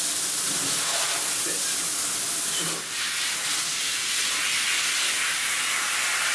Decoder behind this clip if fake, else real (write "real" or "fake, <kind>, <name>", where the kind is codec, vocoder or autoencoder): real